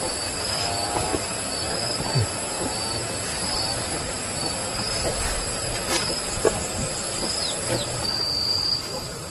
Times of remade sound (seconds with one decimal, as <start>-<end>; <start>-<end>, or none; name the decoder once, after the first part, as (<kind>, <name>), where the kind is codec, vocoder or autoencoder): 0.0-1.1 (vocoder, BigVGAN v2); 1.7-9.3

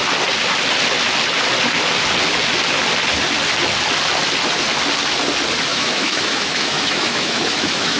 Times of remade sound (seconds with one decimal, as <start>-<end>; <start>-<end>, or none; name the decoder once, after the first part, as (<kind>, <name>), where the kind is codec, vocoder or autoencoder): 5.7-8.0 (autoencoder, DAC-VAE)